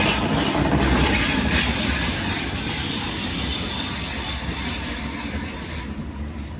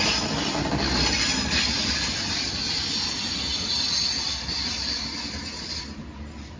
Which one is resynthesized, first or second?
first